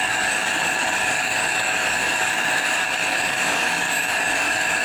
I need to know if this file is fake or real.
fake